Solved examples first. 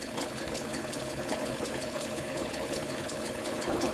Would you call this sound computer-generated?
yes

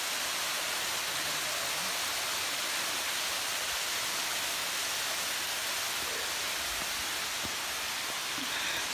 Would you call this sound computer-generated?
no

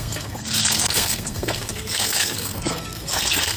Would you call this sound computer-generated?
yes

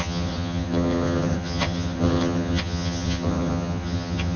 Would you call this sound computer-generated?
yes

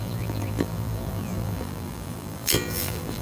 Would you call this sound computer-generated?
yes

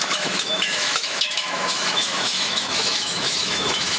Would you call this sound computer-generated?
yes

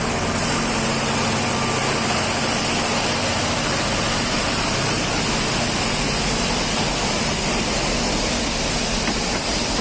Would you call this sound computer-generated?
no